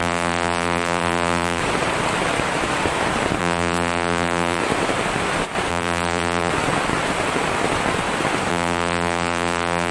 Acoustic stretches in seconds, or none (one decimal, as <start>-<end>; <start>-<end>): 1.6-3.4; 4.6-5.7; 6.5-8.5